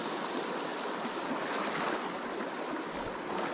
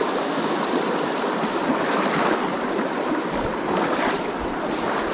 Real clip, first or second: first